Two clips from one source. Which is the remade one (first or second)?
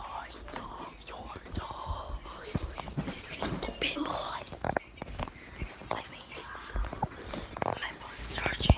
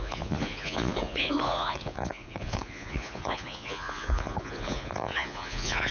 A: second